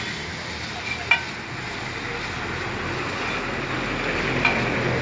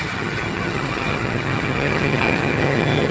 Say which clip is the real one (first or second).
first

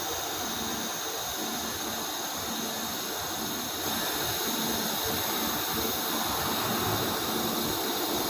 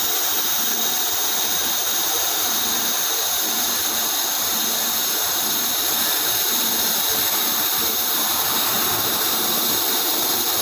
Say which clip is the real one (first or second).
first